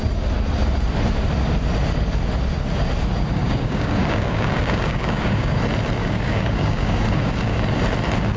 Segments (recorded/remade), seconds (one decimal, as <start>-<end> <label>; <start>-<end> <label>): 0.0-3.4 recorded; 3.4-5.6 remade; 5.6-6.0 recorded; 6.0-7.6 remade; 7.6-8.4 recorded